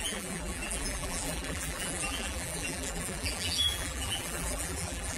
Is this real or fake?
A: fake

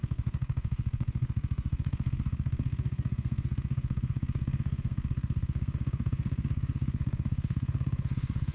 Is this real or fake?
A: fake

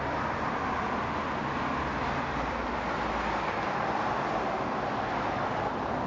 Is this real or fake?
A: real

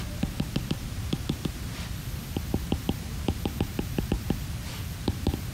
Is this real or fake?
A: fake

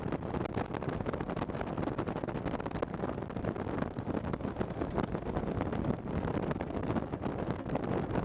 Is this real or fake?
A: real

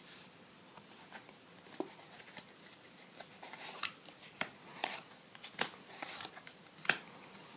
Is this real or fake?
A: fake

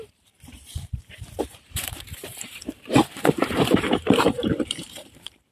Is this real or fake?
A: fake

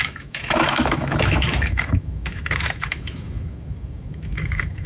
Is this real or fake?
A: fake